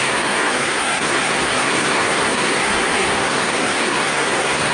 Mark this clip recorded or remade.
remade